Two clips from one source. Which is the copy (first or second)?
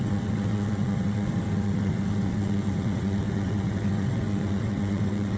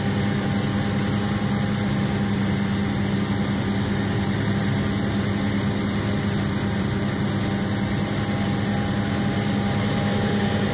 first